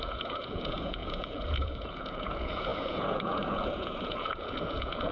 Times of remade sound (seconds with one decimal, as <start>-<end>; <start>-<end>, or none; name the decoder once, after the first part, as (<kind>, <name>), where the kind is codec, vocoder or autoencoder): 0.0-5.1 (vocoder, Vocos)

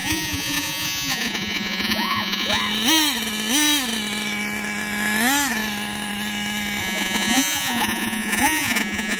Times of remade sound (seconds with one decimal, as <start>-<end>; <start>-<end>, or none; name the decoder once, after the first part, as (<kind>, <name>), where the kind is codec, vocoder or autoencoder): 0.0-2.6 (vocoder, Vocos); 6.8-9.2

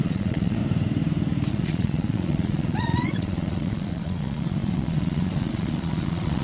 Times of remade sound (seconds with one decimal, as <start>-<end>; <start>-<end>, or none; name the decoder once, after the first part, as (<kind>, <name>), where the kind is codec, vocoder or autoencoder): 0.0-0.6 (vocoder, Vocos); 1.5-6.4

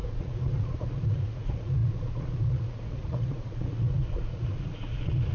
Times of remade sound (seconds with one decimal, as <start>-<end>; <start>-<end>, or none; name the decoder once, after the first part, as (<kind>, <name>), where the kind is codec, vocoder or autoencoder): 0.0-5.3 (vocoder, Vocos)

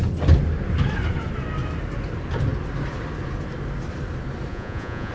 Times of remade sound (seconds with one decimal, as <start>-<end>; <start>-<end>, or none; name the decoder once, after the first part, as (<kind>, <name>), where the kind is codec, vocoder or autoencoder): 4.5-5.1 (vocoder, Vocos)